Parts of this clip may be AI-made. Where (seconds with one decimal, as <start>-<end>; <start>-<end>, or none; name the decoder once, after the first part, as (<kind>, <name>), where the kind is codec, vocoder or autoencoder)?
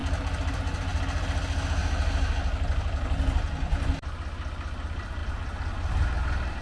0.5-0.9 (vocoder, BigVGAN v2); 4.8-6.6